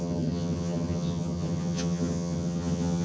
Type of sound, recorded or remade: remade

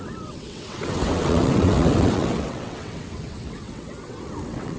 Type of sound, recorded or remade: remade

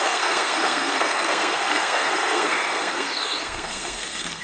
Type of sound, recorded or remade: remade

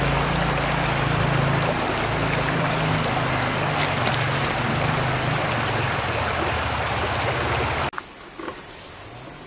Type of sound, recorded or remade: recorded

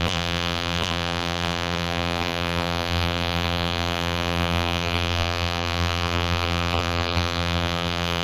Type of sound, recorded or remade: remade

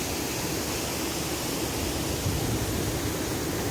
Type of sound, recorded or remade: recorded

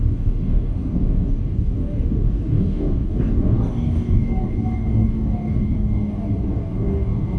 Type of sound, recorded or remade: remade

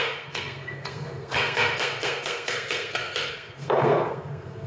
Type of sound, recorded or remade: remade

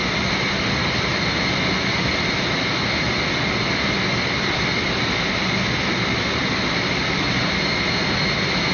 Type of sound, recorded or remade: recorded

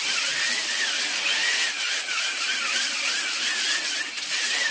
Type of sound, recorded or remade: recorded